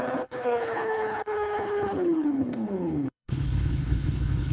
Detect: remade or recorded remade